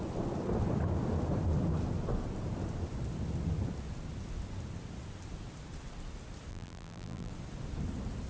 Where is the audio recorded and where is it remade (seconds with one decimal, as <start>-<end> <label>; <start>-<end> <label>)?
0.0-6.5 recorded; 6.5-7.3 remade; 7.3-8.3 recorded

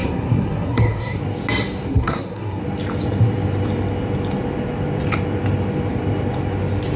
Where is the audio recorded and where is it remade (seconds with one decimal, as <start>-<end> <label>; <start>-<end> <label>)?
0.0-1.2 remade; 1.2-1.9 recorded; 1.9-2.6 remade; 2.6-7.0 recorded

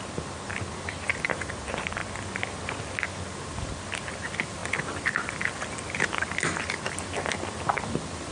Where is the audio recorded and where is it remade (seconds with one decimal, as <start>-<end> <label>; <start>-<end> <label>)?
0.0-8.3 recorded